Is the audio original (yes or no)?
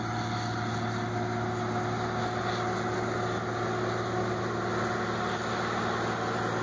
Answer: yes